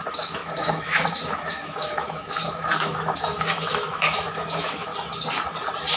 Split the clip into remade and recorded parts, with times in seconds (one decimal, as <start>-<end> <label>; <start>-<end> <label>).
0.0-4.9 remade; 4.9-6.0 recorded